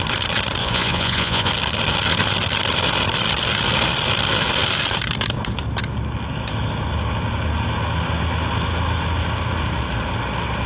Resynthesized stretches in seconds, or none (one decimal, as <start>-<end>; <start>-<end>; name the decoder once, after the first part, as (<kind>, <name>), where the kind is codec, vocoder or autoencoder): 0.6-1.5 (vocoder, Vocos)